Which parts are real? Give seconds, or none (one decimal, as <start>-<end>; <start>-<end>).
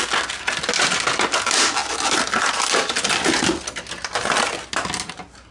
0.0-5.5